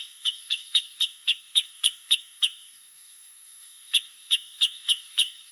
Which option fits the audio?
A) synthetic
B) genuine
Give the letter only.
A